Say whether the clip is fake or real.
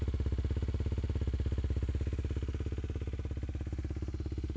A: real